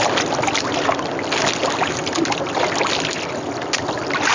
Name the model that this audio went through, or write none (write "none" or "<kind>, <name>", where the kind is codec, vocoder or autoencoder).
none